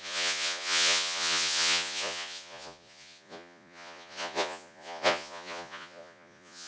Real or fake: fake